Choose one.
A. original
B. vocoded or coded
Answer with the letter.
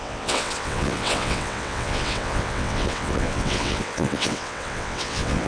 B